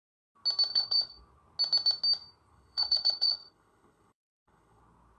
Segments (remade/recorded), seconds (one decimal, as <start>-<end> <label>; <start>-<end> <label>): 0.0-0.7 recorded; 0.7-1.2 remade; 1.2-2.5 recorded; 2.5-4.8 remade; 4.8-5.2 recorded